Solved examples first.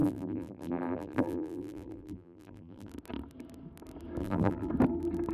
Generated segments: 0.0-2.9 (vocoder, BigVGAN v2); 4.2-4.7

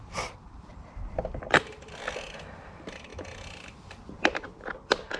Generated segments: 0.8-1.6 (vocoder, BigVGAN v2)

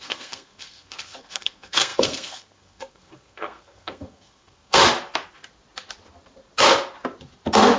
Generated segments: 0.0-4.8 (codec, SNAC)

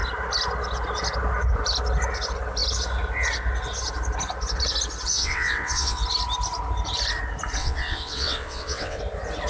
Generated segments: 5.1-6.0 (vocoder, WaveNeXt); 7.6-9.0

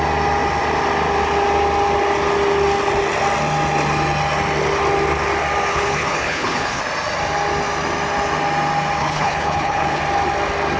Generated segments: 5.7-6.8 (codec, HILCodec); 9.0-10.0

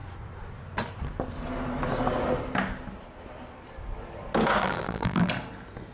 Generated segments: 4.6-5.3 (vocoder, BigVGAN v2)